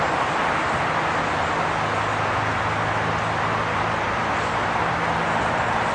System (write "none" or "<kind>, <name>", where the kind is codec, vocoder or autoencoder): none